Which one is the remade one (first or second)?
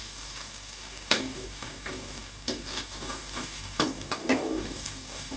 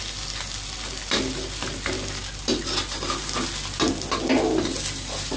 first